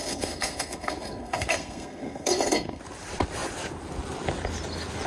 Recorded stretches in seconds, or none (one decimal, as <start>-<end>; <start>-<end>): 2.8-5.1